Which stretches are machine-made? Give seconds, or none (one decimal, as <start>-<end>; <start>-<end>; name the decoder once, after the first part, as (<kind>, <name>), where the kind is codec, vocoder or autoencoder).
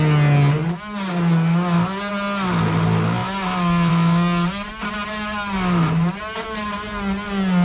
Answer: none